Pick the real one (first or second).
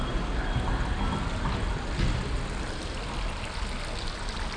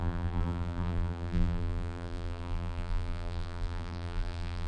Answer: first